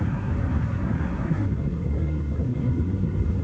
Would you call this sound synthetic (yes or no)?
yes